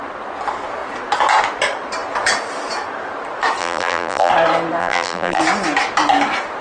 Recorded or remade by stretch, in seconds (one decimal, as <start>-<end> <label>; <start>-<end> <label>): 0.0-3.6 recorded; 3.6-4.3 remade; 4.3-4.8 recorded; 4.8-5.4 remade; 5.4-6.6 recorded